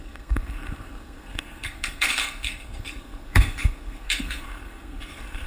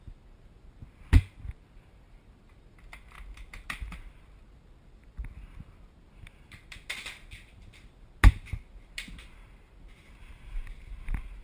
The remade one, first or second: first